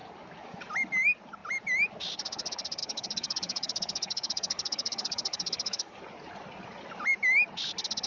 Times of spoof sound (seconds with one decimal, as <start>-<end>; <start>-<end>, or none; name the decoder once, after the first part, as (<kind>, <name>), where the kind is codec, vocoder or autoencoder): 2.8-6.0 (codec, DAC)